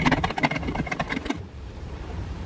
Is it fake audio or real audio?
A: fake